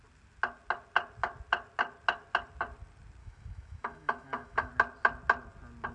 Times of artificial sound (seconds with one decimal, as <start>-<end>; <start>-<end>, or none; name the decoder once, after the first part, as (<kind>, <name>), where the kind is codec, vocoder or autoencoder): 3.2-4.7 (autoencoder, DAC-VAE)